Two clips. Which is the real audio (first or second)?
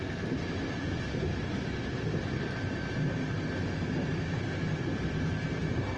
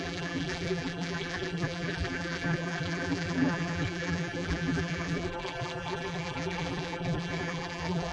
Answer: first